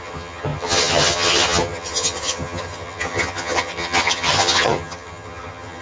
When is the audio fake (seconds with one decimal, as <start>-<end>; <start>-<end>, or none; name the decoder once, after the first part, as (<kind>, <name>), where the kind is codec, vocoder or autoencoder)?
0.0-5.8 (vocoder, HiFi-GAN)